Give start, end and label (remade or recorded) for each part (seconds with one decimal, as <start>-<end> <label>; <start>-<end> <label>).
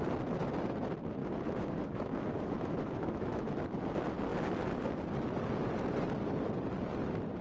0.0-1.2 recorded; 1.2-3.6 remade; 3.6-7.4 recorded